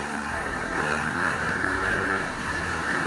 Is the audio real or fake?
fake